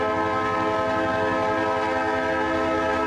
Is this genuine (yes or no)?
yes